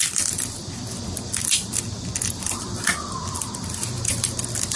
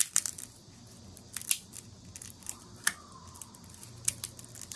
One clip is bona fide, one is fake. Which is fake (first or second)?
first